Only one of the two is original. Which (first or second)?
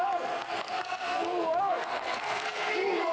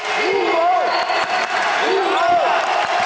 second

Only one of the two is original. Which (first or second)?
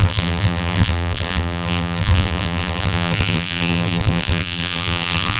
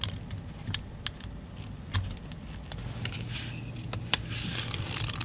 second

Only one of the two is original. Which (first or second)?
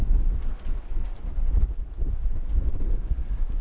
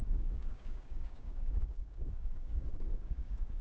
first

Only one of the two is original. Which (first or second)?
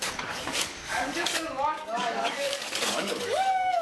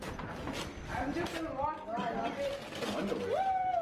second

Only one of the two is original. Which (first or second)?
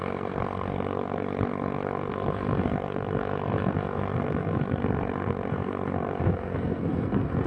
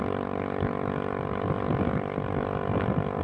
second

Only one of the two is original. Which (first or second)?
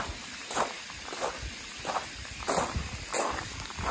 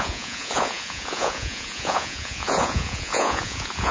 first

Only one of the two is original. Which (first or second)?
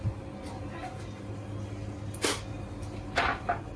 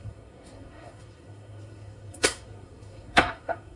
first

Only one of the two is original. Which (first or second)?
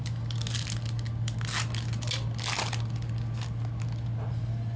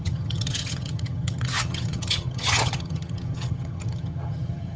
first